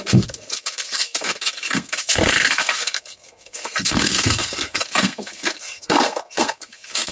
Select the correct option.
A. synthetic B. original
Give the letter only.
A